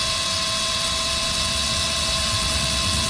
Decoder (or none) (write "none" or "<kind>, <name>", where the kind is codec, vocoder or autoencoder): vocoder, WaveNeXt